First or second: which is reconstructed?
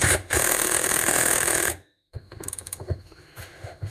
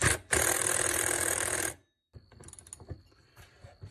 first